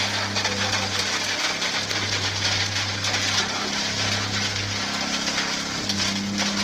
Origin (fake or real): real